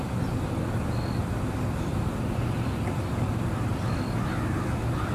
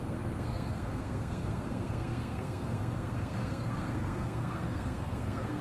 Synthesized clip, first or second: second